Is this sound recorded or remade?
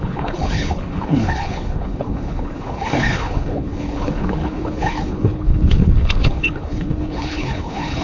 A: remade